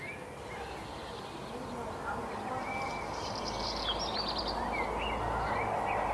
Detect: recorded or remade recorded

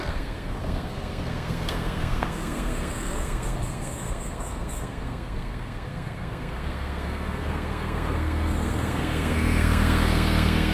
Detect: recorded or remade remade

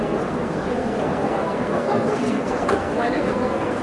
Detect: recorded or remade remade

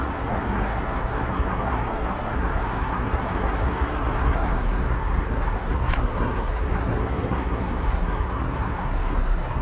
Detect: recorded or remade remade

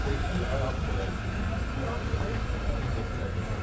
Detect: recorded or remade recorded